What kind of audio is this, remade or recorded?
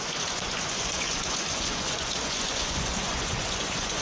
remade